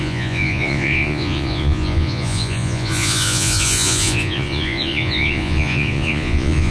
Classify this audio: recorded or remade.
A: remade